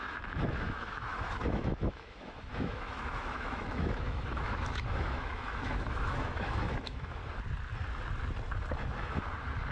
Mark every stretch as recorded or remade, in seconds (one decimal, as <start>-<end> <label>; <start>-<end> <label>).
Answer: 0.0-7.2 remade; 7.2-9.7 recorded